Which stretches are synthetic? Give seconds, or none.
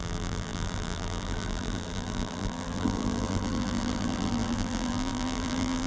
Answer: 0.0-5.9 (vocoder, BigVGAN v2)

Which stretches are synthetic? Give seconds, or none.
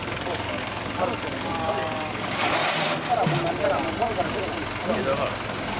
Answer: 0.0-2.6 (codec, DAC)